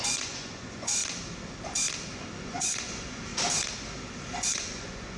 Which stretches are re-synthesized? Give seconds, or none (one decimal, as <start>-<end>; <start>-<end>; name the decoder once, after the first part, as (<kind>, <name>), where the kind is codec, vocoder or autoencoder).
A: 0.0-1.0 (vocoder, Vocos); 2.4-3.3; 4.5-5.2